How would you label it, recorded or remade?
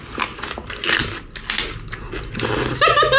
recorded